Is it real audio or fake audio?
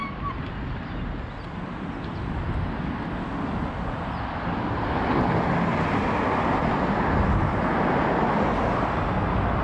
real